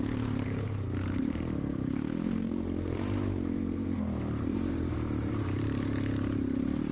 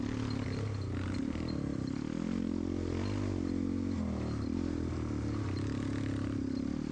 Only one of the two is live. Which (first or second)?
second